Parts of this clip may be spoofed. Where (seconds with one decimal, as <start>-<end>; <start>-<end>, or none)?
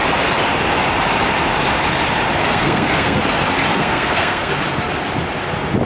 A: 2.4-3.2; 3.7-4.5